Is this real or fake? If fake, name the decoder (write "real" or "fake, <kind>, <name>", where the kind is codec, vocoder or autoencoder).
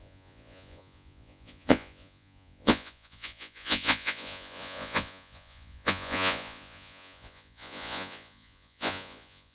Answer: fake, vocoder, Vocos